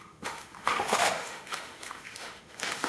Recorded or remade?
remade